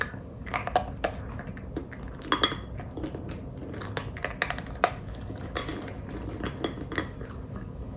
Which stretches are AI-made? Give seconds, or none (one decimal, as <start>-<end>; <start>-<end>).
0.0-0.6; 4.9-5.7; 7.5-8.0